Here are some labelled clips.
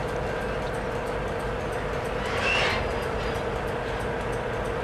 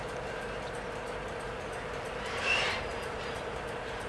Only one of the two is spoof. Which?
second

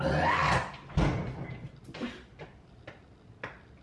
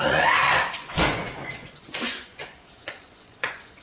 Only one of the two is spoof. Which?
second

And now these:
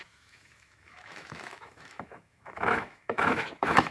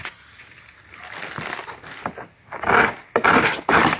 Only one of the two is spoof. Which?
first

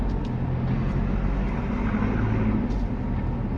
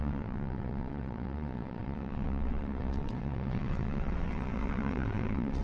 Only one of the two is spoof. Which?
second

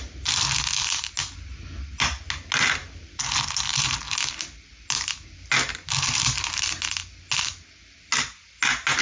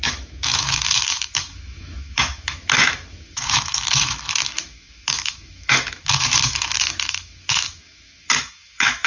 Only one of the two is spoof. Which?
second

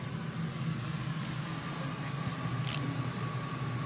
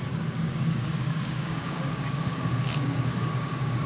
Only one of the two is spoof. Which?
second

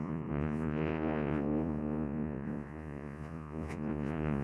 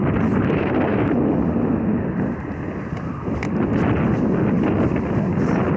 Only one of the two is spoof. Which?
first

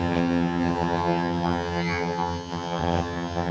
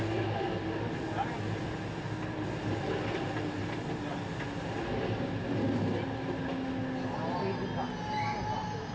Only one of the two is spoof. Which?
first